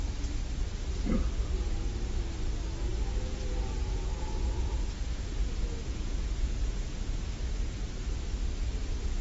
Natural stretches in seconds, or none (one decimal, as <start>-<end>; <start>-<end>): 0.0-2.9; 7.4-9.2